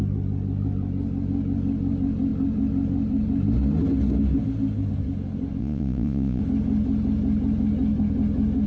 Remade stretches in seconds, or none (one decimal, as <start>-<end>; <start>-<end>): 5.6-6.4